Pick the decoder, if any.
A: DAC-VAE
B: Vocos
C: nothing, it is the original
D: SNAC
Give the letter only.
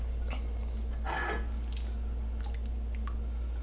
C